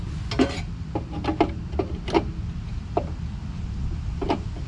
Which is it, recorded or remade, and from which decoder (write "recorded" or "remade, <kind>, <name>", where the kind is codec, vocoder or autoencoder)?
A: recorded